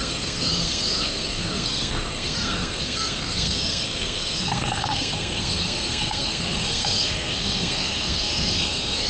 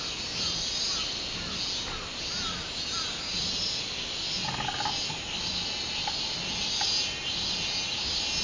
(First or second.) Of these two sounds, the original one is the second